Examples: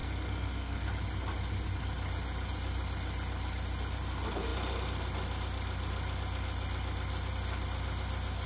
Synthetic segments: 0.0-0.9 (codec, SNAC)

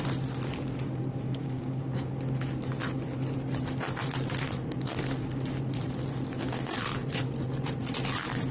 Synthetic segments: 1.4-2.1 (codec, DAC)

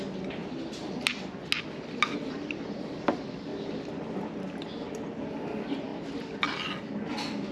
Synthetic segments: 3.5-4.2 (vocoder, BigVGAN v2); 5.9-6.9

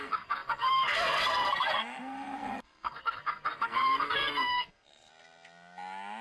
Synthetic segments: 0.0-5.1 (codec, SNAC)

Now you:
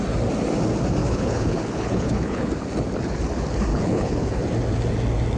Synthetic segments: 1.0-2.5 (codec, HILCodec); 3.7-4.4

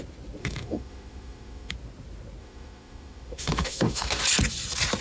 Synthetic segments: 0.4-1.7 (autoencoder, DAC-VAE); 2.4-4.2

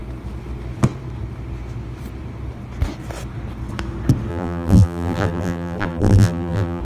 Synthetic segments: 4.3-6.8 (vocoder, BigVGAN v2)

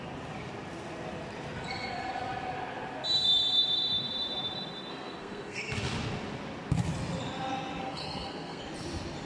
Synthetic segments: 4.9-5.6 (codec, SNAC); 7.8-8.6